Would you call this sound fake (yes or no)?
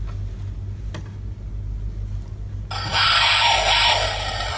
no